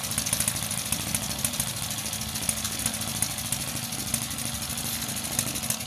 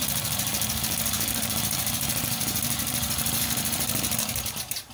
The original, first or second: first